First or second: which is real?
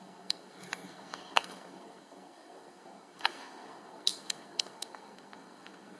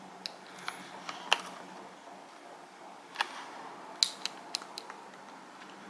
second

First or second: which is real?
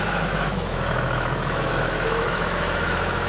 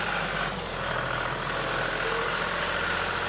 second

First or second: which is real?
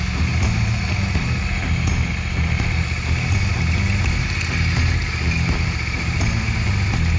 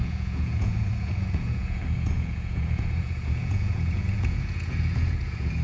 first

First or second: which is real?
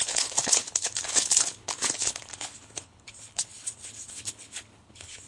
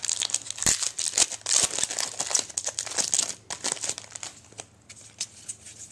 second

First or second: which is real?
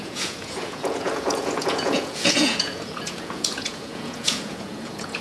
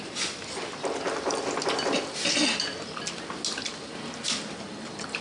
second